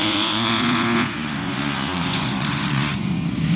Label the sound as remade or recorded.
remade